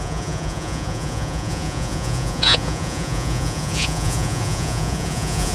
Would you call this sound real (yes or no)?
no